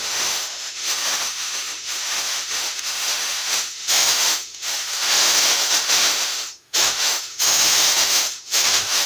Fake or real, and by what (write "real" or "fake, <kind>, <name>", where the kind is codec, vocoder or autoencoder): fake, autoencoder, DAC-VAE